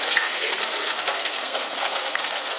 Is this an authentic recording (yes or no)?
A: no